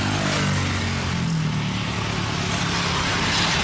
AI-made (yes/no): no